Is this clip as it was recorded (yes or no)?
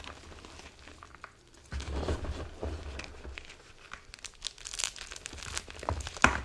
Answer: yes